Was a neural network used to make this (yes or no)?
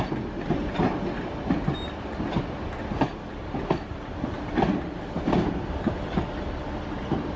no